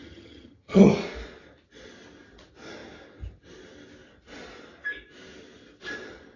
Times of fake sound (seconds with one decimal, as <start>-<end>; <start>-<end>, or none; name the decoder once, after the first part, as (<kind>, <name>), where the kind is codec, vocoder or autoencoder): 0.0-0.9 (vocoder, HiFi-GAN)